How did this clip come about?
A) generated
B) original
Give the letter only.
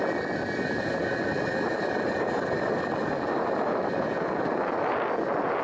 B